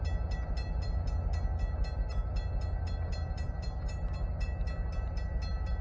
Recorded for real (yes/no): yes